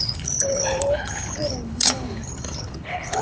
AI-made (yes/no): yes